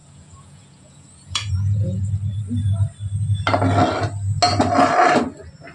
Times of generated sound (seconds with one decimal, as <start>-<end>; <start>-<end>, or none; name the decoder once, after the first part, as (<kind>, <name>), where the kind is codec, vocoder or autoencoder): 0.0-2.1 (vocoder, Vocos)